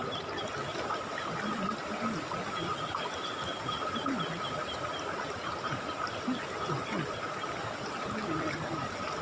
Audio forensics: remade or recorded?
recorded